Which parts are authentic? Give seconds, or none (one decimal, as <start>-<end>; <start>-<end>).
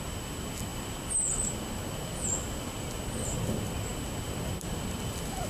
0.0-5.5